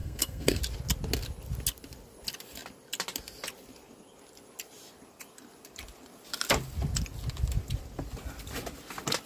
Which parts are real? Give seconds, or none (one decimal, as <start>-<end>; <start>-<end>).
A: 0.6-9.3